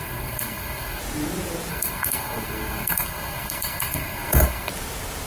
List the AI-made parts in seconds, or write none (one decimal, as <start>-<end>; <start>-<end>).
0.0-1.0; 1.7-4.7